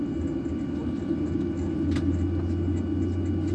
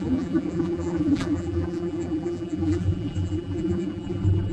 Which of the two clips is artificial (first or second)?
second